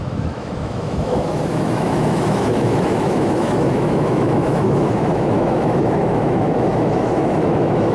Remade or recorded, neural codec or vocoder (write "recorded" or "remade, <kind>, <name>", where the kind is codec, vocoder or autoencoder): remade, autoencoder, DAC-VAE